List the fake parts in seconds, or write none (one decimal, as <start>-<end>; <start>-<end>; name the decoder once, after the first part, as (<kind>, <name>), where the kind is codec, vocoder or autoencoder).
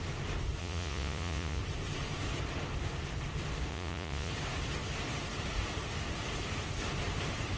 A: 0.6-1.6 (vocoder, Vocos); 3.7-4.3